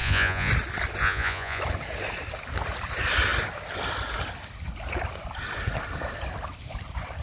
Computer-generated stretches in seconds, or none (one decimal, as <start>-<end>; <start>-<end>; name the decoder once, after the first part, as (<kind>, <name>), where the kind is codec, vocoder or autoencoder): 0.0-0.5 (vocoder, Vocos); 1.0-1.6

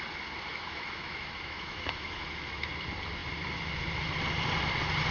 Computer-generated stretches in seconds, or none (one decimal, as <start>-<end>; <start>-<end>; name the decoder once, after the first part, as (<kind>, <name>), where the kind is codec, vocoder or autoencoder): 0.5-2.7 (autoencoder, DAC-VAE)

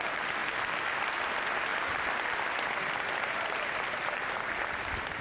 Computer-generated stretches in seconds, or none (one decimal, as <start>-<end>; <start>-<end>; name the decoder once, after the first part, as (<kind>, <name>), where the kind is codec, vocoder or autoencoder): 0.0-0.4 (vocoder, BigVGAN v2); 1.2-5.2

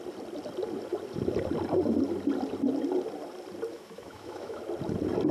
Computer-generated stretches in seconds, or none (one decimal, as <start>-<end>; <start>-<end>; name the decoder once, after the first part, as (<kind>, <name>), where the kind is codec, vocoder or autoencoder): 3.7-4.6 (autoencoder, DAC-VAE)

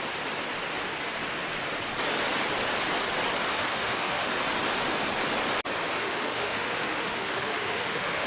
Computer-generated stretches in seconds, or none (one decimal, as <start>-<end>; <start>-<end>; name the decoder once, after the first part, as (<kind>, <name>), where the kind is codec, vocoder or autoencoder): 3.5-4.3 (autoencoder, DAC-VAE); 6.0-8.3

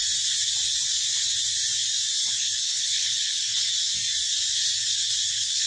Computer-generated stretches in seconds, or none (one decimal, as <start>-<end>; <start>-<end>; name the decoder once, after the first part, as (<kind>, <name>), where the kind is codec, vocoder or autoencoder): 2.3-3.7 (codec, HILCodec); 5.3-5.7

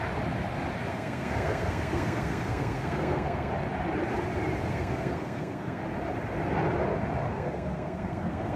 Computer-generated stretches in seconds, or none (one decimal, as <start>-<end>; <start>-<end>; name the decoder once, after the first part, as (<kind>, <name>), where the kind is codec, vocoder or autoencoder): 0.9-3.5 (codec, SNAC); 4.7-5.8; 7.3-8.6